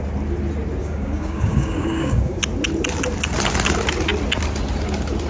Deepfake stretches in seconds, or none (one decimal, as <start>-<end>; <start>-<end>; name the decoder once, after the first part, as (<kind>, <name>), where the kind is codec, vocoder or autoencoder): 0.8-2.4 (codec, DAC)